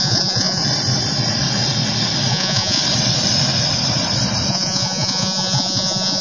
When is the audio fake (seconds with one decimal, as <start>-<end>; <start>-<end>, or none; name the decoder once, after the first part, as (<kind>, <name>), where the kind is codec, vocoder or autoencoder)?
0.0-0.6 (vocoder, Vocos); 2.3-2.8; 4.5-6.2